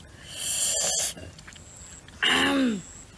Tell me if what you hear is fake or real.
real